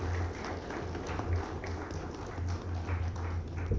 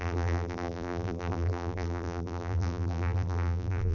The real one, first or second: first